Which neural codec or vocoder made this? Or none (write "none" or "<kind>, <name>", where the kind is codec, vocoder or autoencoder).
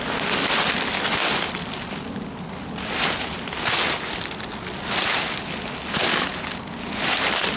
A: none